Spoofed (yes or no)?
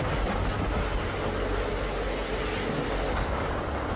no